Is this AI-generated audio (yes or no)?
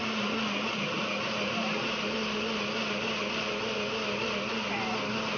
no